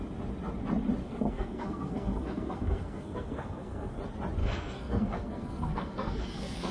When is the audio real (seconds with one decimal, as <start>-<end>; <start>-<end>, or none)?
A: 0.0-1.0; 4.0-4.4

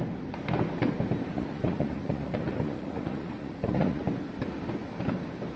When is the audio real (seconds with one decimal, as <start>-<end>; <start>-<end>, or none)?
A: 0.0-1.3; 4.0-5.6

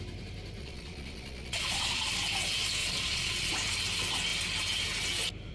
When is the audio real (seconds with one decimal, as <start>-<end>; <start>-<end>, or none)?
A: 0.0-0.6; 2.1-2.8; 3.5-5.5

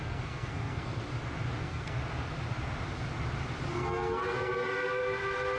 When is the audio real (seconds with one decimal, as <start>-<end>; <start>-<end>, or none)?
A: 1.0-1.6; 2.0-3.7; 5.0-5.6

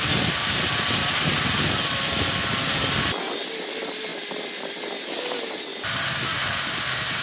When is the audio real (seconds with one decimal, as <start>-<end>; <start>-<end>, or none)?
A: 0.0-7.2

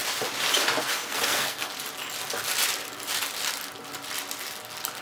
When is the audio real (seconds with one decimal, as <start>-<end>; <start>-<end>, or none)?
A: 0.0-0.8; 1.7-5.0

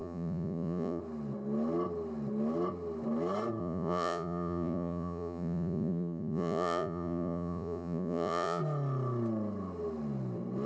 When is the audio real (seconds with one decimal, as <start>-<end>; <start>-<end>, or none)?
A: 1.0-3.6; 8.6-10.7